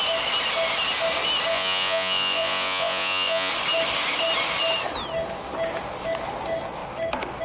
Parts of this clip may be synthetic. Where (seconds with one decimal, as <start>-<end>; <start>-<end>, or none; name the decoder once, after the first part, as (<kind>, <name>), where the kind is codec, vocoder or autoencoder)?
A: 1.5-3.5 (vocoder, Vocos)